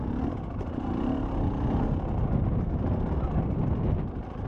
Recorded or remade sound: recorded